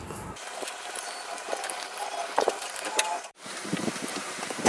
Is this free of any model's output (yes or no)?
no